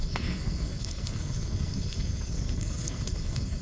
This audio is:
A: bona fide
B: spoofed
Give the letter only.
B